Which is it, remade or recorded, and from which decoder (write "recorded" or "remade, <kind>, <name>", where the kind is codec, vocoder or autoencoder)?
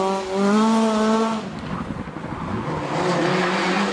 recorded